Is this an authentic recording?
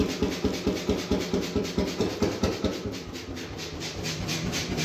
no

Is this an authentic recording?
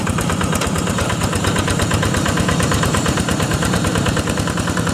no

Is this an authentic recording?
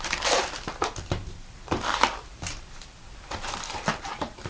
no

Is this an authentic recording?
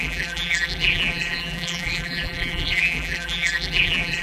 no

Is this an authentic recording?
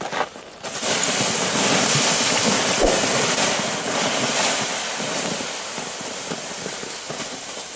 yes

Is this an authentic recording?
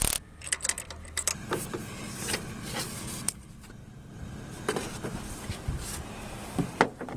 yes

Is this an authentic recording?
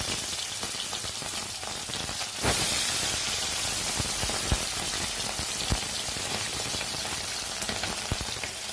no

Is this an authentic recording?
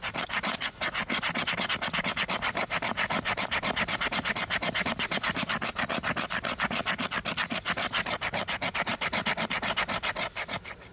yes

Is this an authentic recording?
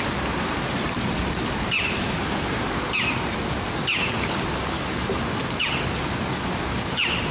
no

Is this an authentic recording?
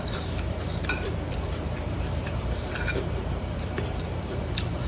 no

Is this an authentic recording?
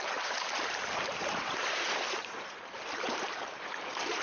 no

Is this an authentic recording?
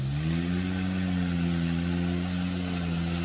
yes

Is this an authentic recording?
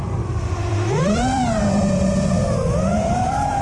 no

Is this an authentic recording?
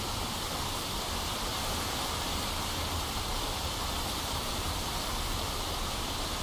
no